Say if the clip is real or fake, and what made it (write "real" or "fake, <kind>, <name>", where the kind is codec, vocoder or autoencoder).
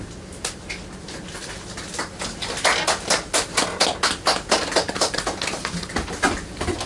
real